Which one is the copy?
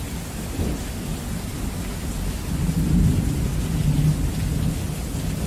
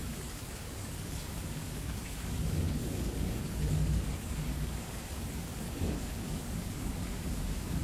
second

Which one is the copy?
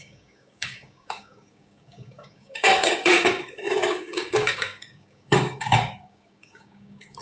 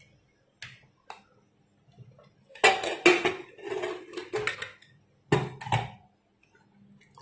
first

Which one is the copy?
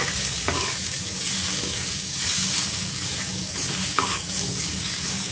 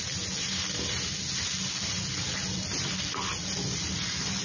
first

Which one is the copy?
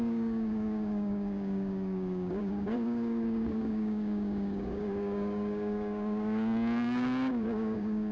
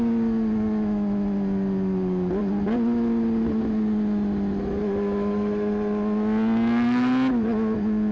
first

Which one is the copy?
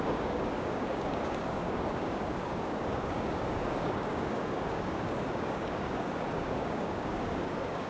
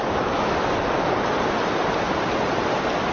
first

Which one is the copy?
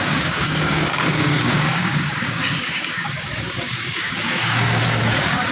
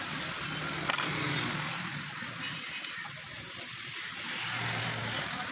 first